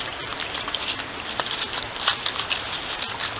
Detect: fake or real real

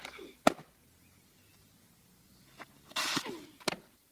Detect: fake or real real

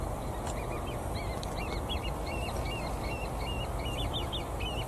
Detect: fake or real real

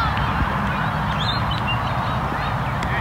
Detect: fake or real real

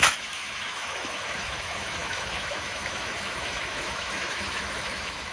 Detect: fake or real fake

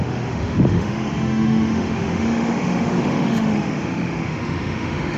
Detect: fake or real fake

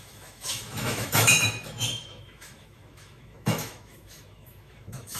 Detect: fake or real fake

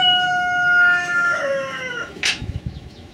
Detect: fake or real fake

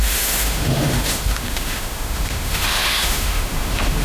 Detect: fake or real fake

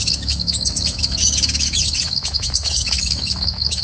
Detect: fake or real fake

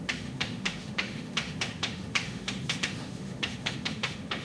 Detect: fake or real fake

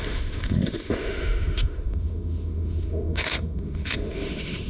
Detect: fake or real fake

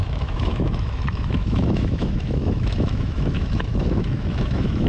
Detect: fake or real fake